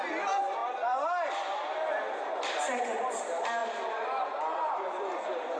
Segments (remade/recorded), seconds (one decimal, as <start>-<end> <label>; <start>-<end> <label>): 0.0-3.6 recorded; 3.6-4.8 remade; 4.8-5.6 recorded

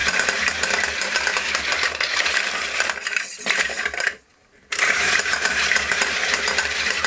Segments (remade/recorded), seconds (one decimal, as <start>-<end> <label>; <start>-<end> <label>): 0.0-7.1 remade

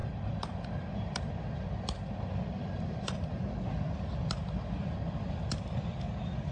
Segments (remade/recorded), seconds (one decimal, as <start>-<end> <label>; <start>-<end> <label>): 0.0-1.3 remade; 1.3-2.6 recorded; 2.6-3.4 remade; 3.4-6.5 recorded

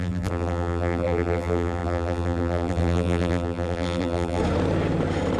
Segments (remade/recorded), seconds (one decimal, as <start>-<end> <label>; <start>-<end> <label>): 0.0-4.4 remade; 4.4-5.4 recorded

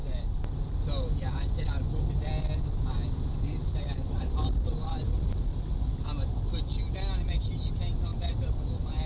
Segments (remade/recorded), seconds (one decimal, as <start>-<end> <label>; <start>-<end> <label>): 0.0-2.0 recorded; 2.0-5.5 remade; 5.5-7.7 recorded; 7.7-9.1 remade

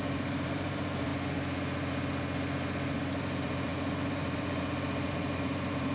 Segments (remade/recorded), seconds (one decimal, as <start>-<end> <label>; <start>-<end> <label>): 0.0-1.1 remade; 1.1-3.2 recorded; 3.2-5.9 remade

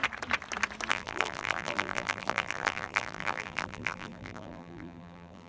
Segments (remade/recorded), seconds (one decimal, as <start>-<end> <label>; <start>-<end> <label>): 0.0-0.9 recorded; 0.9-5.5 remade

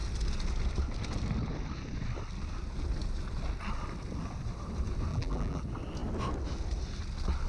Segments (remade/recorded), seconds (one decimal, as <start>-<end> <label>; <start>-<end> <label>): 0.0-5.1 recorded; 5.1-5.6 remade; 5.6-7.5 recorded